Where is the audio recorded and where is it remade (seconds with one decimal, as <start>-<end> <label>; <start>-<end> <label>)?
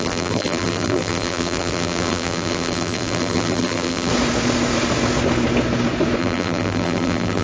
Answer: 0.0-4.1 remade; 4.1-6.2 recorded; 6.2-7.4 remade